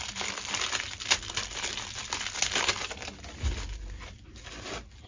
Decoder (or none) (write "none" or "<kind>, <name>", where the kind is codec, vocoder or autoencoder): none